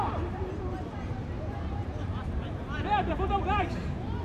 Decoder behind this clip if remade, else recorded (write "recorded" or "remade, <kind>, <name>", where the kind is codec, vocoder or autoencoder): remade, vocoder, BigVGAN v2